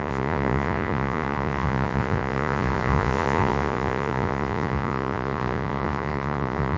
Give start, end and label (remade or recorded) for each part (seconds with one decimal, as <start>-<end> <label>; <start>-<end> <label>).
0.0-6.8 remade